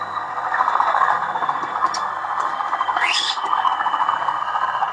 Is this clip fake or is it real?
fake